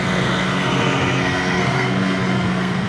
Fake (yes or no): yes